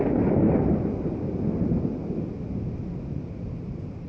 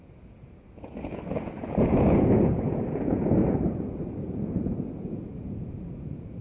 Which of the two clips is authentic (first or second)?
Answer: first